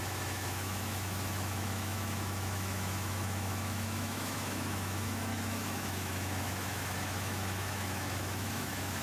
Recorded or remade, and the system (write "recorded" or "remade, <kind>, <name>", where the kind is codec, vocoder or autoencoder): remade, autoencoder, DAC-VAE